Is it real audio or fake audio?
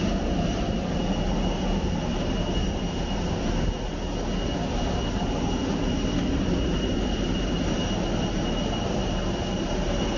real